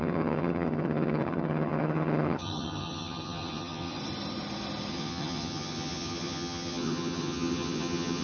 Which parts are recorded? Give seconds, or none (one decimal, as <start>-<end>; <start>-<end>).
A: 4.0-4.9